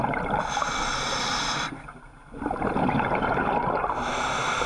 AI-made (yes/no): no